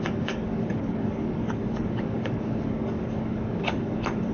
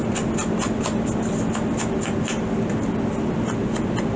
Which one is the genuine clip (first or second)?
second